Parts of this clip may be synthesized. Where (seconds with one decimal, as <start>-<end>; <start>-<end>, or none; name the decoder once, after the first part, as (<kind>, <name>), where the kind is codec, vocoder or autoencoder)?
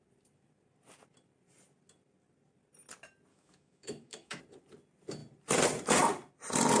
3.3-4.4 (autoencoder, DAC-VAE)